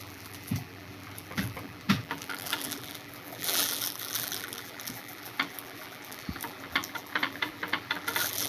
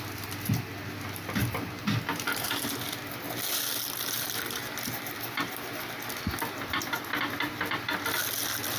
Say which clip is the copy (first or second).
first